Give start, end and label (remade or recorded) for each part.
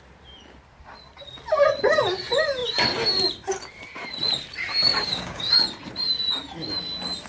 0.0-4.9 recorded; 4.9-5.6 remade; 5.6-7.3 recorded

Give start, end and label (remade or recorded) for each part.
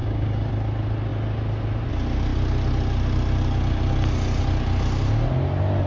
0.0-0.5 remade; 0.5-5.9 recorded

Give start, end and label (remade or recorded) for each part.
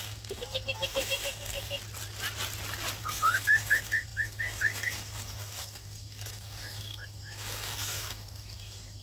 0.0-1.8 remade; 1.8-3.0 recorded; 3.0-9.0 remade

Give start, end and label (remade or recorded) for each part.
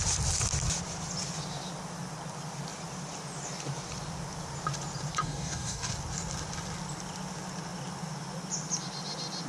0.0-5.2 recorded; 5.2-5.9 remade; 5.9-9.5 recorded